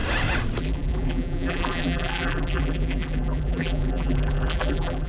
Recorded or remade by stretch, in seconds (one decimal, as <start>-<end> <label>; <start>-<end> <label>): 0.0-0.6 recorded; 0.6-5.1 remade